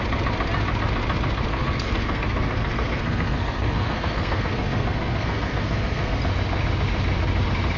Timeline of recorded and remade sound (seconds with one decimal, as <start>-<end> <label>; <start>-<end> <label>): 0.0-1.5 recorded; 1.5-6.2 remade; 6.2-7.8 recorded